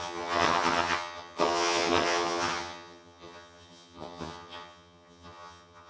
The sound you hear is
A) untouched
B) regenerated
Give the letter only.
B